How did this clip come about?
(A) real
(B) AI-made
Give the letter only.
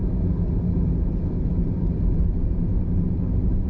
A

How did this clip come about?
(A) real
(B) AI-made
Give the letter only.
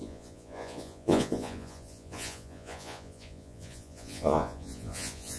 B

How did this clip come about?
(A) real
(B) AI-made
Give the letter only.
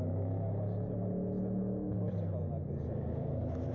A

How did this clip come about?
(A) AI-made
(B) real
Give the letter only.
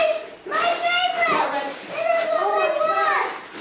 B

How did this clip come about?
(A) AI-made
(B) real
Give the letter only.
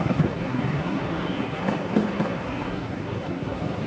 A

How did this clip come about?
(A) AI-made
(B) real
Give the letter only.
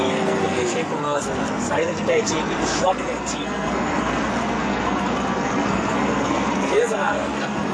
A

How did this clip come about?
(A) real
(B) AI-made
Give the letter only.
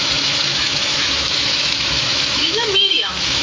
B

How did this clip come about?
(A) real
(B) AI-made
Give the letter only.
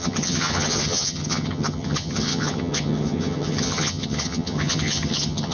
B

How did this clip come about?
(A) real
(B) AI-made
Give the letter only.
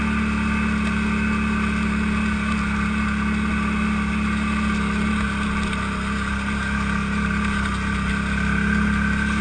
A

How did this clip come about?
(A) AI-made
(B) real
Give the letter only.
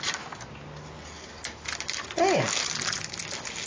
B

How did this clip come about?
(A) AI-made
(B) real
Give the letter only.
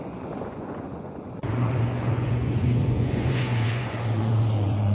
A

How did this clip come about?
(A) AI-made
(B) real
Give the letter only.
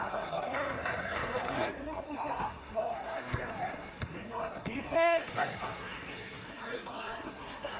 A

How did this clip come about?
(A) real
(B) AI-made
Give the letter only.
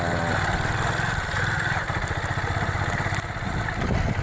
A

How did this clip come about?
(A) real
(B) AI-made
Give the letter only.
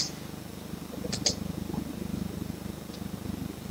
A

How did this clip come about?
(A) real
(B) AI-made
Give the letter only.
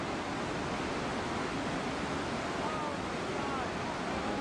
A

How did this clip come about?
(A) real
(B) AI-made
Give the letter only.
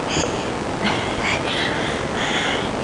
A